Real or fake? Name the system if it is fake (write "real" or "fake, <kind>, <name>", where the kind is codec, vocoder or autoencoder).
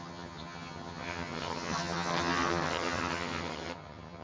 fake, vocoder, HiFi-GAN